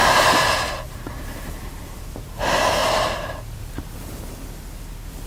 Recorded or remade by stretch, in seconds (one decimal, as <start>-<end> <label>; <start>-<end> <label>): 0.0-2.4 remade; 2.4-2.8 recorded; 2.8-3.7 remade; 3.7-5.3 recorded